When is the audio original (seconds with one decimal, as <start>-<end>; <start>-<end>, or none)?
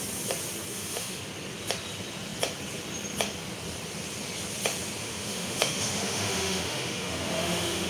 0.0-0.7; 1.2-5.0